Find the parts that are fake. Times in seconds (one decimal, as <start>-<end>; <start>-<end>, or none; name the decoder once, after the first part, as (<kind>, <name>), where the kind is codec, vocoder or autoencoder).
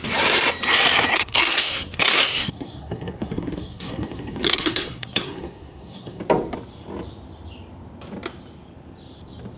1.1-6.2 (codec, SNAC)